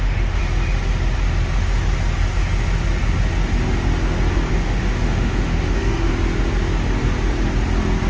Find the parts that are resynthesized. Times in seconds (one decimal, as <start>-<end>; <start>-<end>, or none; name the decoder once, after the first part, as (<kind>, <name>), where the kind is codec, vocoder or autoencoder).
0.0-0.4 (autoencoder, DAC-VAE); 4.5-6.1